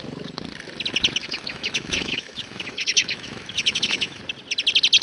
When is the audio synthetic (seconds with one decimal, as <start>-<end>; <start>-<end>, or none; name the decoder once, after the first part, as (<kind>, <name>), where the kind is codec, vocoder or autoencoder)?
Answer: 1.2-4.2 (autoencoder, DAC-VAE)